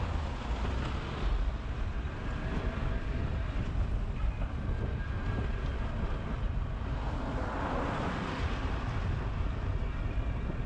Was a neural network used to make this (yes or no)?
no